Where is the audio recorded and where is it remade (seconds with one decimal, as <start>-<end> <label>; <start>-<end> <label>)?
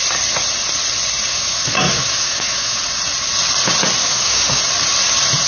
0.0-1.3 recorded; 1.3-2.8 remade; 2.8-4.0 recorded; 4.0-4.6 remade; 4.6-5.5 recorded